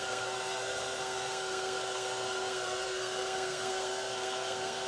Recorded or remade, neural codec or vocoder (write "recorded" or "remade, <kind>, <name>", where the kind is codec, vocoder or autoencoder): remade, codec, SNAC